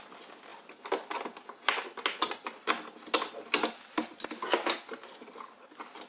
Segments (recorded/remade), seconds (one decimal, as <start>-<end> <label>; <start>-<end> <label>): 0.0-6.1 recorded